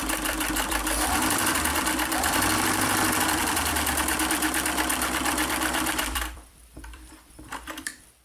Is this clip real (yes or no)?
no